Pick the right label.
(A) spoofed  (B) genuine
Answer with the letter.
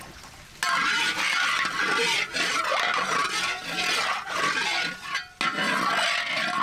B